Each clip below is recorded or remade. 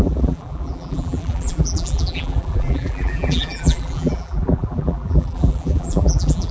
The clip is remade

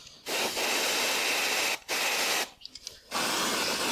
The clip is recorded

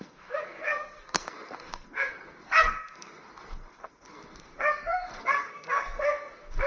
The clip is remade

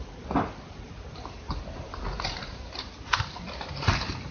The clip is recorded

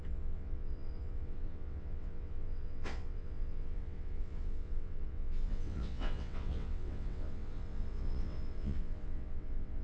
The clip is remade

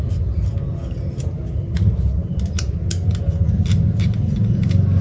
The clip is recorded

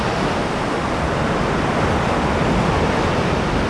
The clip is recorded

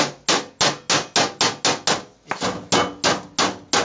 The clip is recorded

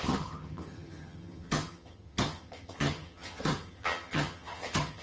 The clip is remade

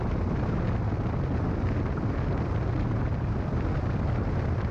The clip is recorded